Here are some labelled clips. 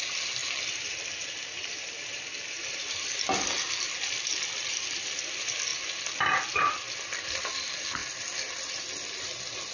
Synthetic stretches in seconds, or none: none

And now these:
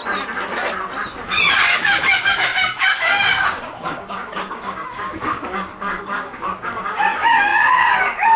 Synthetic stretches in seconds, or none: 1.5-8.4 (codec, DAC)

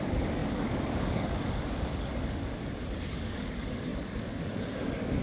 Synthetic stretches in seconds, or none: 0.0-5.2 (codec, DAC)

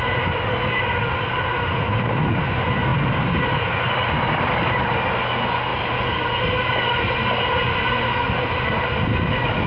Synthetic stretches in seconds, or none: none

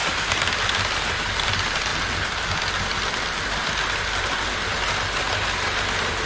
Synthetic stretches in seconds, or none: none

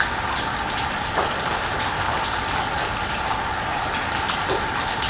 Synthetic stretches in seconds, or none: none

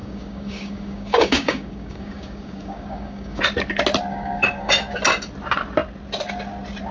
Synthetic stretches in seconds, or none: 0.0-3.4 (codec, DAC); 4.1-4.7